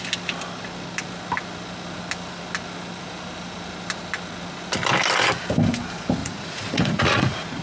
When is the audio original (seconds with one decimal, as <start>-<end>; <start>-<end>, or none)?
0.0-6.2

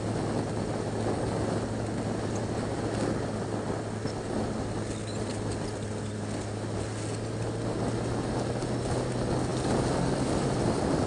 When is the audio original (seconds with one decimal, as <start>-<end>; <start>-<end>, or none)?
0.0-11.1

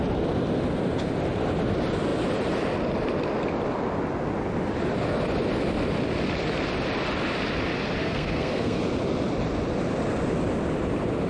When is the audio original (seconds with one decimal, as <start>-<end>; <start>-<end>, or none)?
0.0-8.0; 8.8-11.3

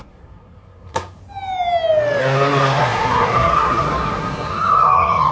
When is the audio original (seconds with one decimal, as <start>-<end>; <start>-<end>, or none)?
1.2-2.2

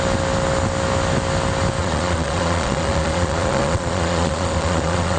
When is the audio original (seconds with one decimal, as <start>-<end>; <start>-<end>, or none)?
0.0-1.8